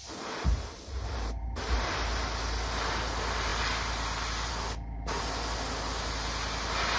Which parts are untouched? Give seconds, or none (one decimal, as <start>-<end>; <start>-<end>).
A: 0.0-7.0